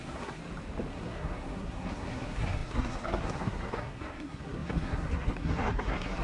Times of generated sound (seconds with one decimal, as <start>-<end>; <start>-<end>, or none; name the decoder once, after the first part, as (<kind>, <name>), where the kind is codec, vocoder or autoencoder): 0.0-0.4 (codec, SNAC); 0.9-6.2